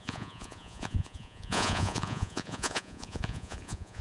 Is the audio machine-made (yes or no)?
yes